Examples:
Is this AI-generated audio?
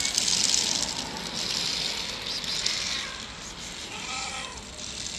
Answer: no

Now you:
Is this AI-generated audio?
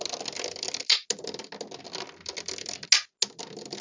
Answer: no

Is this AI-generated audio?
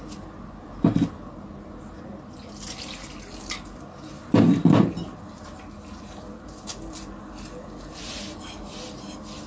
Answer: no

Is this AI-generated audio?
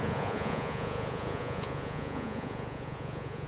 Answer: yes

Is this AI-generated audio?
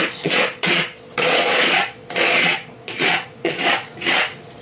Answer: yes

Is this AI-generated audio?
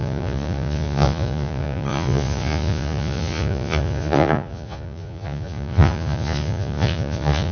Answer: yes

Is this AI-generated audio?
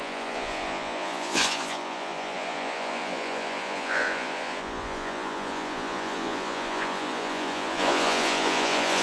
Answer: yes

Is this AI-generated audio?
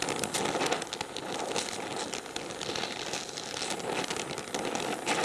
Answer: no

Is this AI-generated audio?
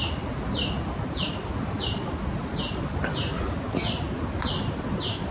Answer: no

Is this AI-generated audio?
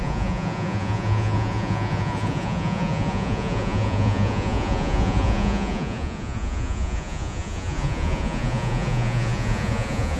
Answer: yes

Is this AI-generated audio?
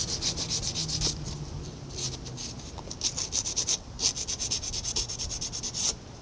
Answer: no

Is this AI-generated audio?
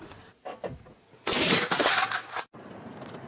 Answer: no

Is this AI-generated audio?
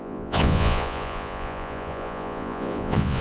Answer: yes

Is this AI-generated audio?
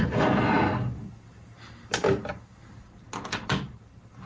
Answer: no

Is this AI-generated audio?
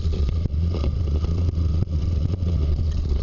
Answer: yes